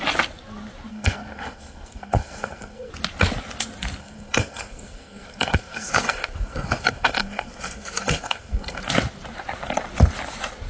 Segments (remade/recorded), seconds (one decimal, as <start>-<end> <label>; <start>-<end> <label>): 0.0-0.9 recorded; 0.9-2.9 remade; 2.9-4.0 recorded; 4.0-8.8 remade; 8.8-10.7 recorded